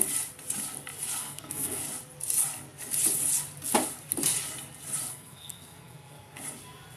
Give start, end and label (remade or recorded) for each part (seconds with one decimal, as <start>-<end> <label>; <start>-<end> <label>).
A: 0.0-1.2 recorded; 1.2-1.8 remade; 1.8-5.1 recorded; 5.1-6.4 remade; 6.4-7.0 recorded